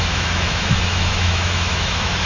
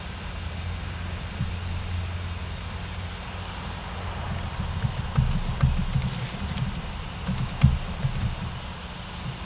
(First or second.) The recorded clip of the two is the second